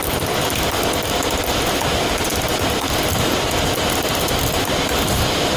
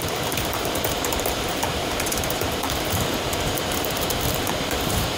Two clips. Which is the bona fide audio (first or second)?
first